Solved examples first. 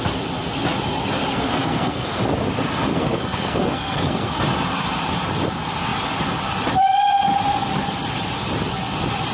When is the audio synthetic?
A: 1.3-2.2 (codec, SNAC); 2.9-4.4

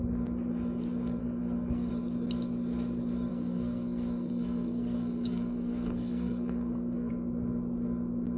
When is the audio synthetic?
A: 1.2-1.9 (codec, SNAC); 3.3-7.1

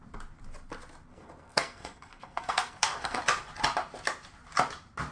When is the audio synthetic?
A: 1.1-3.2 (codec, SNAC)